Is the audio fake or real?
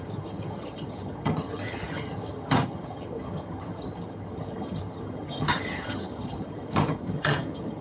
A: fake